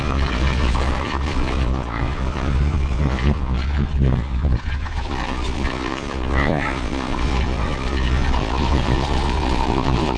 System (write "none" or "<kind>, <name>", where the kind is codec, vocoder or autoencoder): vocoder, Vocos